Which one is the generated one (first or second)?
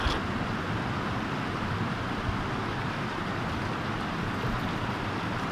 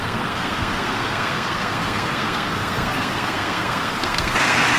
second